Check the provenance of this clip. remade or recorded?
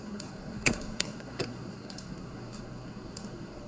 remade